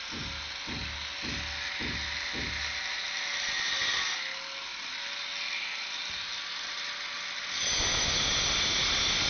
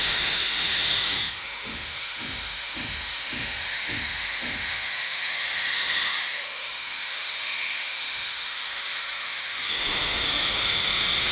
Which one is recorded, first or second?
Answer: first